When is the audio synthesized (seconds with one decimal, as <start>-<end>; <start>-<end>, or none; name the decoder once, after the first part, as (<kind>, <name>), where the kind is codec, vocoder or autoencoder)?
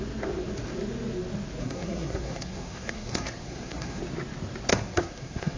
1.6-4.0 (codec, SNAC); 4.7-5.6